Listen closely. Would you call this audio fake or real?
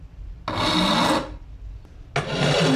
real